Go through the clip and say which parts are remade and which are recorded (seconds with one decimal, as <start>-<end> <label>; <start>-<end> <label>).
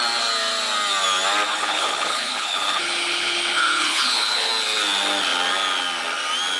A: 0.0-1.5 recorded; 1.5-4.5 remade; 4.5-6.6 recorded